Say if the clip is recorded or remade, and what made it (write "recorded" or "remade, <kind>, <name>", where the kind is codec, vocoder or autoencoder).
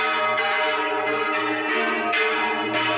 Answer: recorded